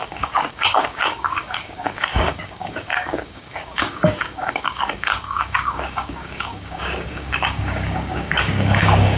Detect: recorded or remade remade